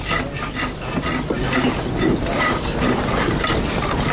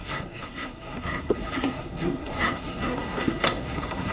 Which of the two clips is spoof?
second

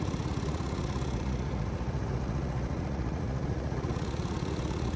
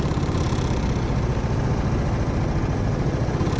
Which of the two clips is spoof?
first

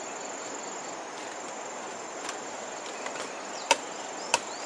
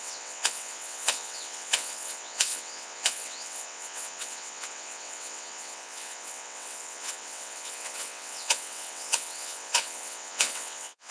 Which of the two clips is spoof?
second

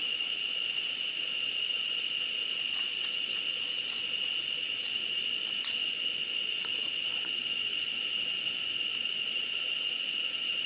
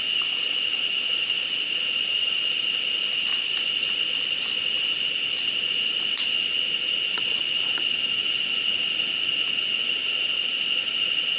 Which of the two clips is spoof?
first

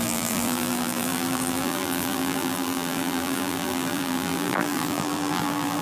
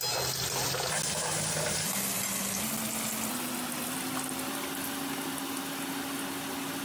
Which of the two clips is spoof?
first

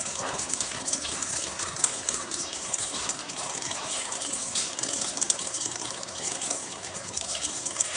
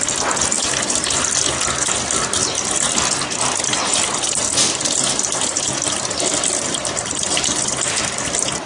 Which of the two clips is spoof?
first